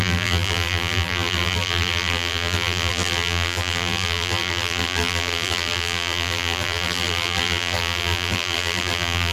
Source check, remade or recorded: remade